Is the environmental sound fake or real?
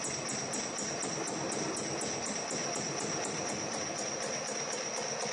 real